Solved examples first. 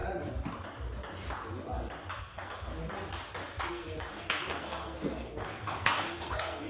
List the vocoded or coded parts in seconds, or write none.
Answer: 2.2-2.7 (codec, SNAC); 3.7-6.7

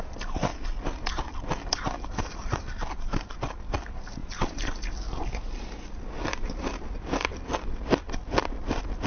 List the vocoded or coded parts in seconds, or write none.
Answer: 0.0-0.5 (vocoder, BigVGAN v2); 1.4-4.2; 5.9-6.7; 8.4-9.1